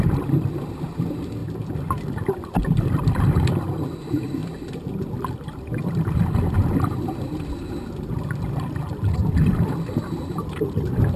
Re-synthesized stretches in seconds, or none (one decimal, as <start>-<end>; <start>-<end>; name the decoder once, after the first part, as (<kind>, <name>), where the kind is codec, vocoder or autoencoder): 0.0-9.2 (vocoder, BigVGAN v2); 10.2-11.2